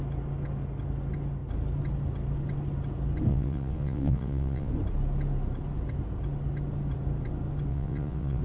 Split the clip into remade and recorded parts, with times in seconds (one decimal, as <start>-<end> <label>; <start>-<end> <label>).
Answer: 0.0-3.3 recorded; 3.3-4.7 remade; 4.7-7.7 recorded; 7.7-8.4 remade